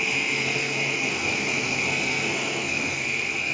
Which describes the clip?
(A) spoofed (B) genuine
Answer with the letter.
A